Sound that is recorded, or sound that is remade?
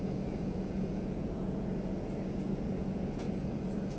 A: remade